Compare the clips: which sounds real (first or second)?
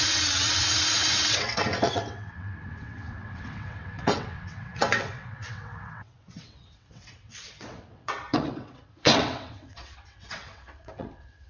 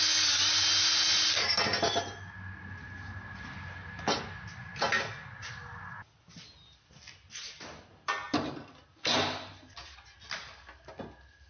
second